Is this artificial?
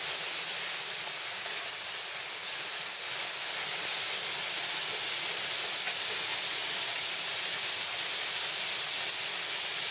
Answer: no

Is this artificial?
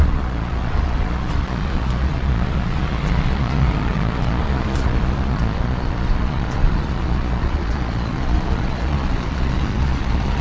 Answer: yes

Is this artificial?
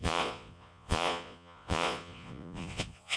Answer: yes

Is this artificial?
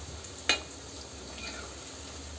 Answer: no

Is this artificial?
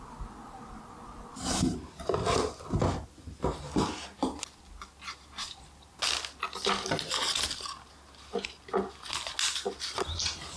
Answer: no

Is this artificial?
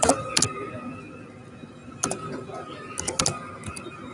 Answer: no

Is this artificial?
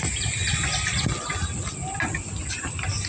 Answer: no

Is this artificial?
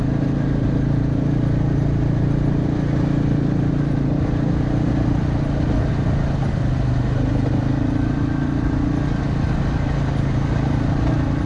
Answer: no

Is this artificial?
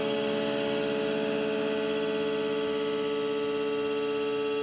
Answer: no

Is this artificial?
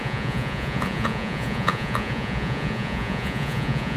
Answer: yes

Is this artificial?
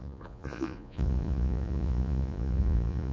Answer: yes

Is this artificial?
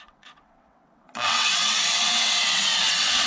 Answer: yes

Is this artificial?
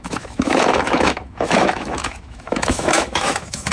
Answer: yes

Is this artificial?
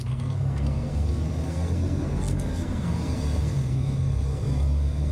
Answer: yes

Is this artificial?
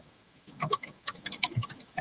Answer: yes